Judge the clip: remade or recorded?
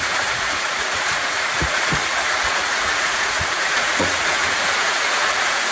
remade